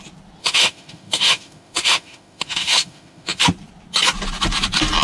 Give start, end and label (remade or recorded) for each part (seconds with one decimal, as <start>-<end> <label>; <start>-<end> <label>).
0.0-0.4 recorded; 0.4-3.4 remade; 3.4-5.0 recorded